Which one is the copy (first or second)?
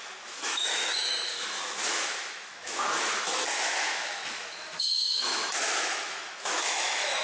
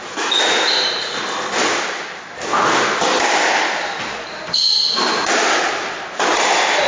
first